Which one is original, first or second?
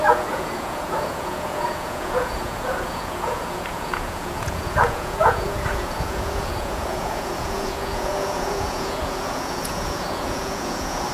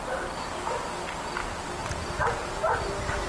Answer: second